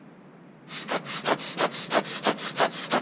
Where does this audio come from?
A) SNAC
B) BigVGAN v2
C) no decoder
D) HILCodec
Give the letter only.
B